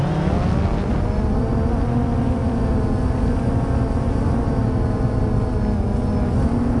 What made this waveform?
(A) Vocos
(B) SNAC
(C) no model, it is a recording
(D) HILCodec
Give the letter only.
C